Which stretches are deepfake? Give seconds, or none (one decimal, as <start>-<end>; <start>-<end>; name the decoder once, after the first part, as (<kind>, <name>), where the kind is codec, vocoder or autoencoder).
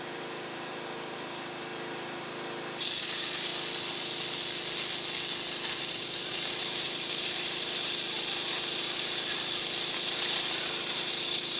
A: 0.0-1.7 (vocoder, BigVGAN v2); 3.0-3.5; 5.8-11.6